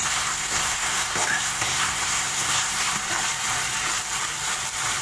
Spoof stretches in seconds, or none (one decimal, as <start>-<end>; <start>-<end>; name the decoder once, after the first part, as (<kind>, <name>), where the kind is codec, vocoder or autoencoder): 0.0-3.0 (codec, SNAC)